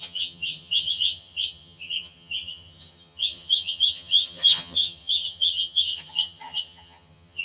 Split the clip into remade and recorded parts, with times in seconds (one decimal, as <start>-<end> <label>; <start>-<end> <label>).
0.0-7.4 remade